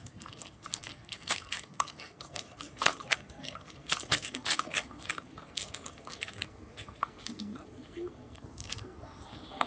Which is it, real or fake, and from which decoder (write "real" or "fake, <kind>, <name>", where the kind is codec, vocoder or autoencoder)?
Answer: fake, codec, SNAC